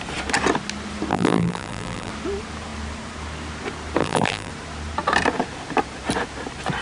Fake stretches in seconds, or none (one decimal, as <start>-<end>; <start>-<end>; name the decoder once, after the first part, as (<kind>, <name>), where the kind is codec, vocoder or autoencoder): 1.1-2.1 (vocoder, BigVGAN v2); 4.0-4.5